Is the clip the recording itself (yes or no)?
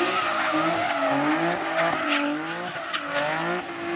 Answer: yes